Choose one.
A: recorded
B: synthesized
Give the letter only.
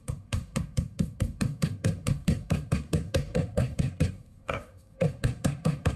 B